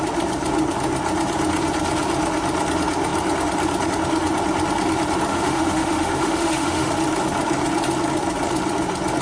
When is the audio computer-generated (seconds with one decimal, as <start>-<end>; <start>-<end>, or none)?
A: 5.3-6.9